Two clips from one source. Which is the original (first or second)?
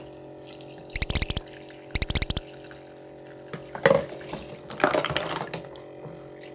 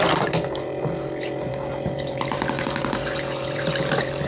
first